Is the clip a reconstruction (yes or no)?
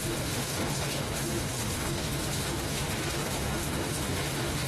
yes